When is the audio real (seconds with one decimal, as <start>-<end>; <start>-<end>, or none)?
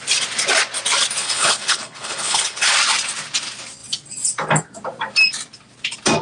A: 0.0-1.2; 2.7-6.2